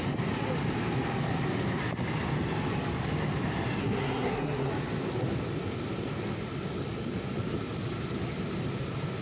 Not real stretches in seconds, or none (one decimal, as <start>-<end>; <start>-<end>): 3.8-4.7